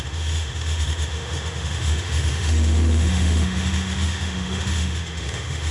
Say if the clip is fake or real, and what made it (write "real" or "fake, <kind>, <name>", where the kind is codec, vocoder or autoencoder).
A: fake, autoencoder, DAC-VAE